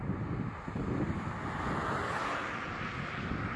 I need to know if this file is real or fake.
real